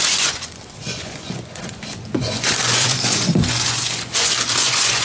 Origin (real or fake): fake